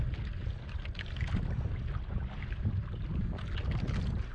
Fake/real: real